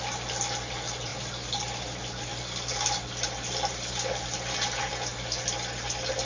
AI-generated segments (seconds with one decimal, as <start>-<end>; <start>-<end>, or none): none

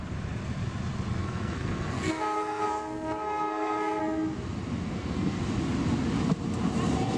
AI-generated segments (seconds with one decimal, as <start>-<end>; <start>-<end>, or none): 1.2-4.0; 4.9-5.4

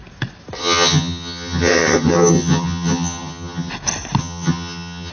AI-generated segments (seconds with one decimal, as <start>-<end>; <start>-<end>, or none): 0.6-3.7; 4.2-5.1